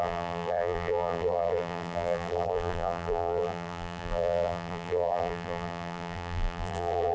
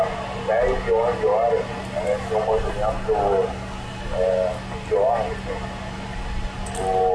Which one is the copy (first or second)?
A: first